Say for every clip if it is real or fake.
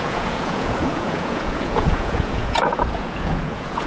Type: fake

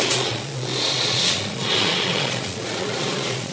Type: fake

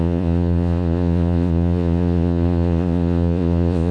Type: fake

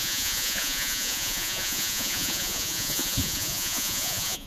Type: fake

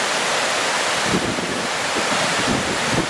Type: real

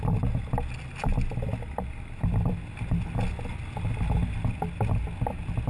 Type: real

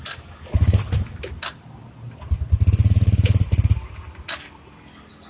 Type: real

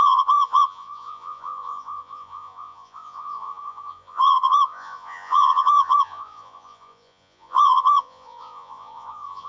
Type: fake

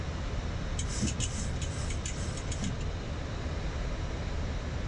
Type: real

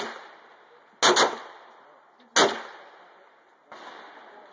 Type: real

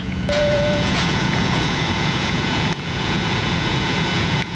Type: fake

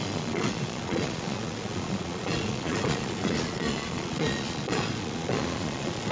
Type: fake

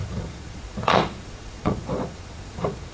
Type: fake